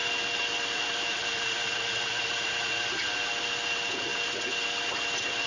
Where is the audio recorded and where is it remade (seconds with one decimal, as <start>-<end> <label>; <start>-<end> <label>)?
0.0-5.5 recorded